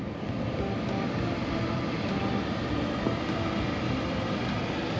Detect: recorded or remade recorded